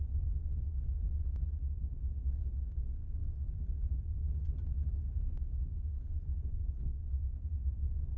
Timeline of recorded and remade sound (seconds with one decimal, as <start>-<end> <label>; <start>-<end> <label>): 0.0-8.2 recorded